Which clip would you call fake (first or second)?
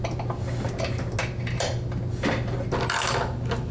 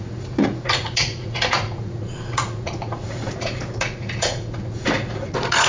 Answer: second